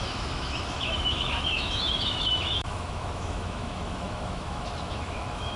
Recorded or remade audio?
remade